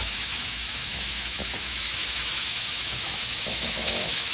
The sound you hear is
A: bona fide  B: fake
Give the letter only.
B